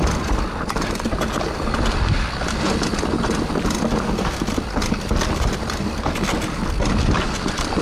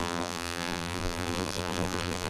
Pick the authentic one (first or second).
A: first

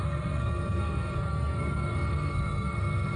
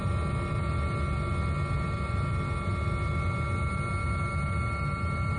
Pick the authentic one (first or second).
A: second